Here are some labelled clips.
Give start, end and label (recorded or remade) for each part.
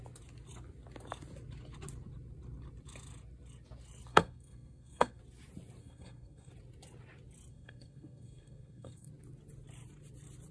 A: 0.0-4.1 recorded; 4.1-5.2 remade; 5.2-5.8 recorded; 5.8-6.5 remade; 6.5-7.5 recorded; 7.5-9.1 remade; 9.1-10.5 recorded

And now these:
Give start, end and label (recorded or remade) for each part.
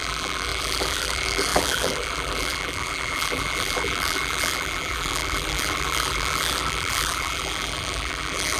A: 0.0-8.6 remade